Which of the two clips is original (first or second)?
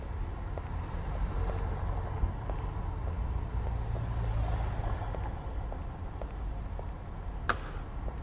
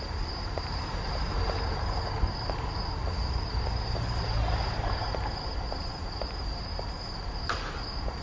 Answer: first